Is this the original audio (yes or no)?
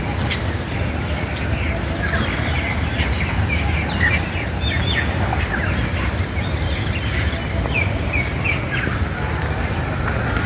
yes